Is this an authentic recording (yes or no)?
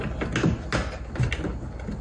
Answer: yes